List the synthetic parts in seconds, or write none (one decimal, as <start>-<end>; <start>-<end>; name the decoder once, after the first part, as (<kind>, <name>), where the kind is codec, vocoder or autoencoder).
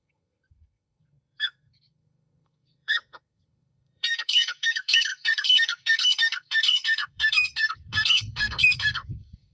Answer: 0.0-9.5 (codec, SNAC)